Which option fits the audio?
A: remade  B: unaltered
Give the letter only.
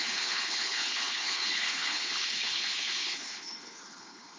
A